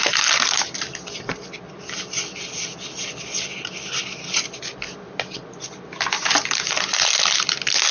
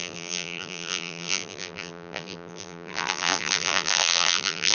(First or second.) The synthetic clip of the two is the second